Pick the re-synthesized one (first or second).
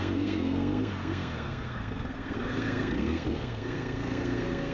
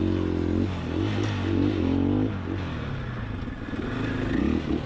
first